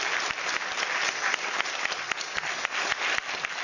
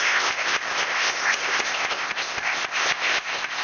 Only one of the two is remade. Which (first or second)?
second